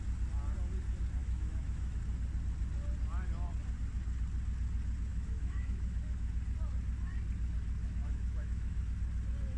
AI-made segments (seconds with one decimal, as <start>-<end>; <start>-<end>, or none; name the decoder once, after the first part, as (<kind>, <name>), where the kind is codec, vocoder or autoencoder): 1.2-2.0 (autoencoder, DAC-VAE); 5.1-6.3; 7.8-8.8